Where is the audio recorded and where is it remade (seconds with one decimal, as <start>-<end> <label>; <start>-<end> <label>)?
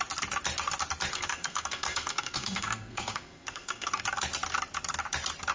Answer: 0.0-1.1 recorded; 1.1-4.0 remade; 4.0-5.5 recorded